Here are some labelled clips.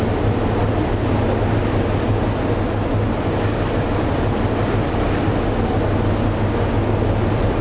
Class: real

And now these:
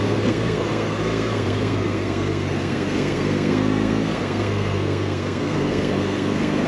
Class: fake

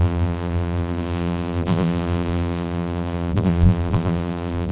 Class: fake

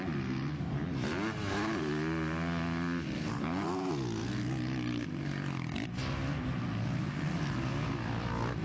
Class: real